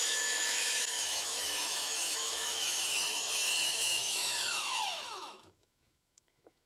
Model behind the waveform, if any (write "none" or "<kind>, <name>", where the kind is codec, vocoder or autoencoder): autoencoder, DAC-VAE